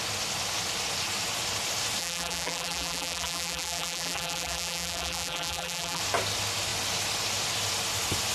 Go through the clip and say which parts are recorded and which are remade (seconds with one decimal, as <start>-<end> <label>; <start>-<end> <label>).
0.0-2.0 recorded; 2.0-6.0 remade; 6.0-8.3 recorded